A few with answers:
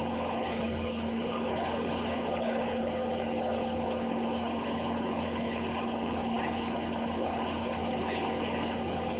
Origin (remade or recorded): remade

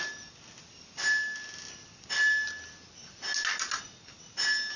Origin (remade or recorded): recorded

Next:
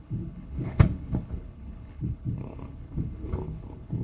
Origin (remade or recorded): remade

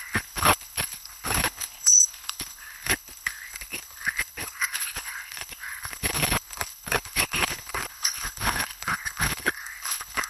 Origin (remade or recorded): remade